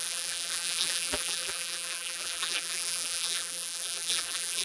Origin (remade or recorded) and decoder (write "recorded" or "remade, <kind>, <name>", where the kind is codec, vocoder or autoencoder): remade, vocoder, BigVGAN v2